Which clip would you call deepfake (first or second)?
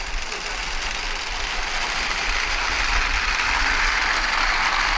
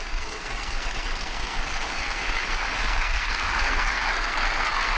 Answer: second